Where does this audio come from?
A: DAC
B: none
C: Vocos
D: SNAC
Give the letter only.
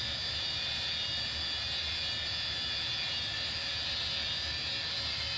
B